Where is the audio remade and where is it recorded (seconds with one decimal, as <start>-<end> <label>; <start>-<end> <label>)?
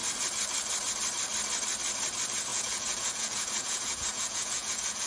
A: 0.0-2.5 recorded; 2.5-5.1 remade